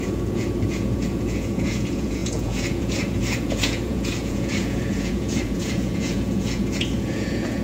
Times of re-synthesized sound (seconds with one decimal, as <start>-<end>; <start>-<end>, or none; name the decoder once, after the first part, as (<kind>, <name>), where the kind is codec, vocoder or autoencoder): 0.0-7.6 (vocoder, Vocos)